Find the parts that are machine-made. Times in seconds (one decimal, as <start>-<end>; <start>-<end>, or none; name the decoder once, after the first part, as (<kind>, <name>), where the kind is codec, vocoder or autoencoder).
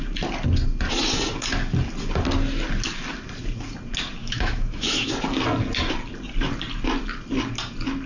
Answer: 4.2-5.1 (autoencoder, DAC-VAE)